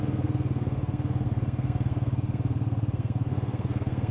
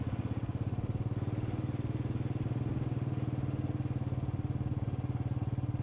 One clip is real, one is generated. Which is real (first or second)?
second